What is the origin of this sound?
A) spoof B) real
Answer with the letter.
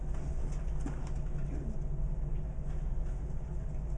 B